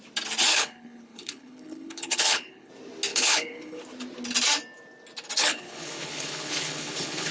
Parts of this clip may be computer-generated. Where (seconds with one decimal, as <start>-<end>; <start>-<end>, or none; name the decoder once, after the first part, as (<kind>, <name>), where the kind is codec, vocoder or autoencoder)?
0.5-2.7 (codec, HILCodec); 3.1-3.8; 5.4-7.3